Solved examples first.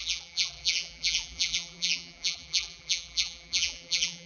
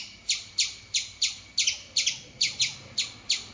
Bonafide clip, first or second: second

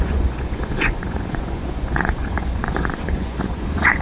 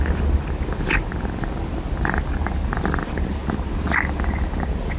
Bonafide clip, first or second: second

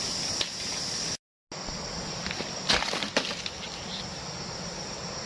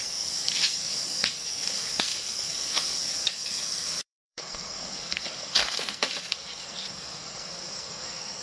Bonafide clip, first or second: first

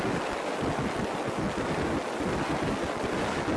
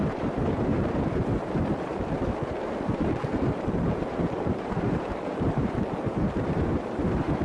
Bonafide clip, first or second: first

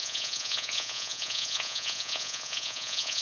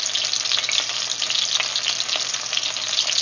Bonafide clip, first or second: second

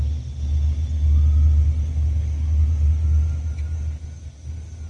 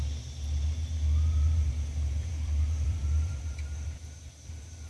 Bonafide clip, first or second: first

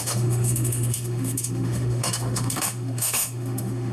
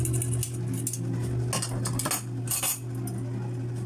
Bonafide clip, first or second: second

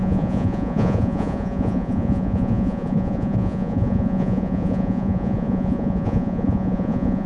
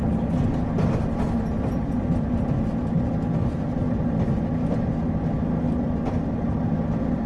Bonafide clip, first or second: second